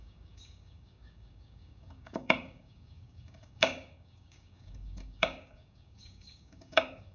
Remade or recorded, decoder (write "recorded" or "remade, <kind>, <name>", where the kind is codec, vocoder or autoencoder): remade, codec, DAC